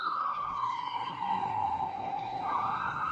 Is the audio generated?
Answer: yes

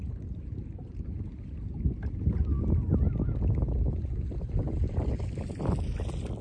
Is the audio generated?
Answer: no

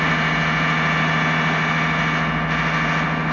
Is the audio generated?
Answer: no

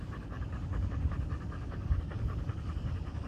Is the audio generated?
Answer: yes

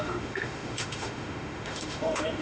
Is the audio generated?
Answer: yes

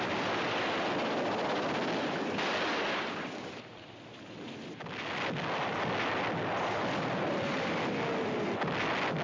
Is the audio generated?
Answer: no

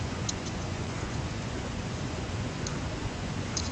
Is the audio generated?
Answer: yes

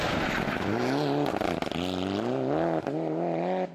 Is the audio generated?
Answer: no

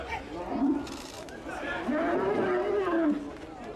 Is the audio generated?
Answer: no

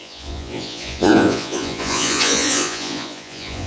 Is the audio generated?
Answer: yes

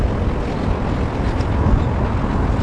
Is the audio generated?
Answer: no